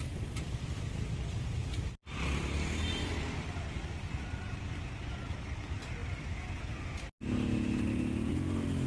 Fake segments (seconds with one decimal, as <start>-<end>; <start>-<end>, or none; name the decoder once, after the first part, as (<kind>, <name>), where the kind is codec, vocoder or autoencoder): none